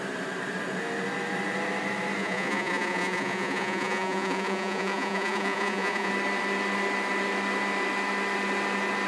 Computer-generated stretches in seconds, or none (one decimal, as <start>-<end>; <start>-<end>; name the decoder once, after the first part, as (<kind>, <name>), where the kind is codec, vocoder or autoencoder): 2.2-6.1 (vocoder, Vocos)

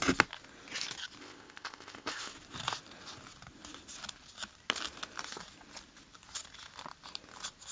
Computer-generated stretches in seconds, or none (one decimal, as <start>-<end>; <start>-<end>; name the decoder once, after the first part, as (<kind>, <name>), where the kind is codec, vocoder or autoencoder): 1.2-2.3 (codec, ZipCodec)

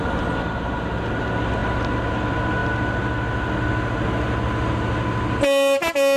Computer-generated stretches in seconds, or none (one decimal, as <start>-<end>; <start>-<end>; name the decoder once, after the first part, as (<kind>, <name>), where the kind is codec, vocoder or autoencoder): none

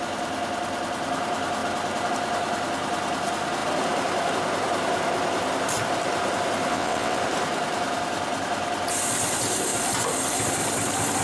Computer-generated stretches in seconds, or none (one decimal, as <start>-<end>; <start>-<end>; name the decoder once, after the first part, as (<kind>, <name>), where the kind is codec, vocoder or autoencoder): 6.7-7.2 (vocoder, WaveNeXt)

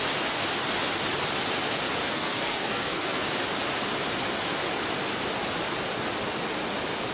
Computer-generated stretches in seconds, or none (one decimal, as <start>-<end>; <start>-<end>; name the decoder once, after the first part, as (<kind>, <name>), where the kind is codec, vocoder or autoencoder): 2.1-3.3 (codec, SNAC)

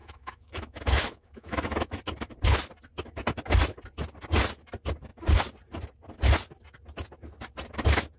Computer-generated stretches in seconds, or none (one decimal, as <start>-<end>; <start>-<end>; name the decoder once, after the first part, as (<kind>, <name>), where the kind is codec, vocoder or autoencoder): 0.0-1.9 (autoencoder, DAC-VAE)